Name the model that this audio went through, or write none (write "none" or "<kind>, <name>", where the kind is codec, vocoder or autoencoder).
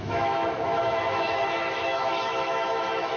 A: autoencoder, DAC-VAE